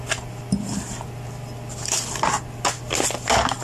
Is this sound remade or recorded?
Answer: recorded